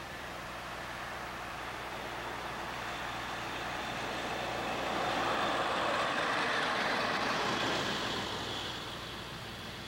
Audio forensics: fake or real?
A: fake